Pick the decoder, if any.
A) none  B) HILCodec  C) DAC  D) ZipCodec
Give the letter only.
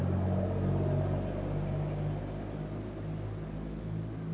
A